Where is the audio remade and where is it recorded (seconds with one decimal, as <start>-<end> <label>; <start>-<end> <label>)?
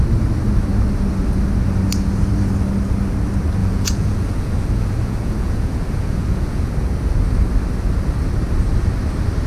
0.0-3.6 recorded; 3.6-6.7 remade; 6.7-9.5 recorded